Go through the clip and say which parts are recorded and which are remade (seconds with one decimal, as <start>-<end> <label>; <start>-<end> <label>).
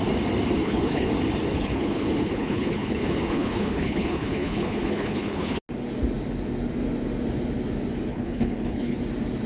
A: 0.0-0.6 recorded; 0.6-1.1 remade; 1.1-1.5 recorded; 1.5-5.6 remade; 5.6-8.1 recorded; 8.1-9.0 remade; 9.0-9.5 recorded